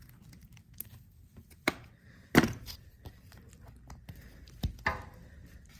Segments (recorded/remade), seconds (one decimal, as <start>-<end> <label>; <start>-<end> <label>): 0.0-1.2 recorded; 1.2-4.7 remade; 4.7-5.8 recorded